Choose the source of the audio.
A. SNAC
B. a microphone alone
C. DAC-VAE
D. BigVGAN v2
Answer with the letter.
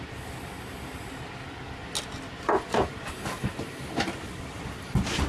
B